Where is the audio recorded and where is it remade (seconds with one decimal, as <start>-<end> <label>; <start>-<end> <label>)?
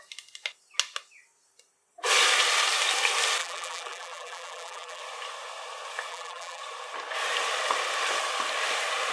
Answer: 0.0-3.4 recorded; 3.4-5.0 remade; 5.0-6.1 recorded; 6.1-6.6 remade; 6.6-9.1 recorded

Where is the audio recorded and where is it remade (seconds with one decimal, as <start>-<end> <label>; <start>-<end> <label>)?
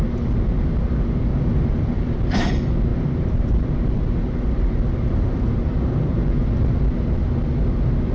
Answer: 0.0-1.3 recorded; 1.3-2.5 remade; 2.5-2.9 recorded; 2.9-6.1 remade; 6.1-8.1 recorded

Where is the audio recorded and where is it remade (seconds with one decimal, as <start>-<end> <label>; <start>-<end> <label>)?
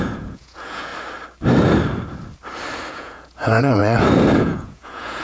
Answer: 0.0-0.9 remade; 0.9-2.9 recorded; 2.9-3.8 remade; 3.8-4.4 recorded; 4.4-5.2 remade